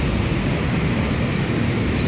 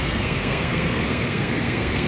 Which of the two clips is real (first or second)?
first